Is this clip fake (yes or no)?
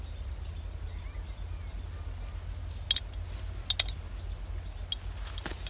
no